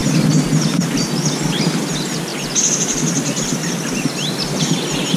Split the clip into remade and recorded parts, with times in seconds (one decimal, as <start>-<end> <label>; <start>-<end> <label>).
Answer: 0.0-5.2 recorded